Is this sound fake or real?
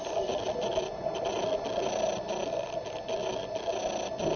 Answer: real